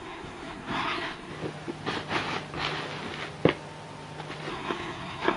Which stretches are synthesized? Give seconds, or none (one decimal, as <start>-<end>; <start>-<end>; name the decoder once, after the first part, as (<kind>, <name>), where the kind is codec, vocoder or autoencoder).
0.0-1.3 (codec, SNAC); 4.5-5.4